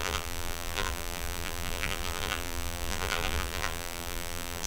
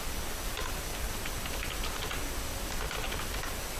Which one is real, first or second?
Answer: second